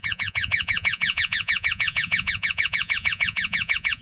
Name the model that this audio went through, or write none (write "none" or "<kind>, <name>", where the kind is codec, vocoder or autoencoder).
vocoder, Vocos